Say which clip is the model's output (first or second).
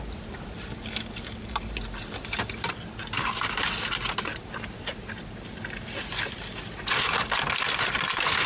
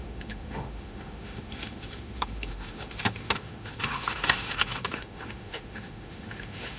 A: second